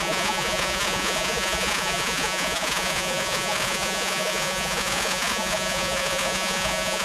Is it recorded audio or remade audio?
remade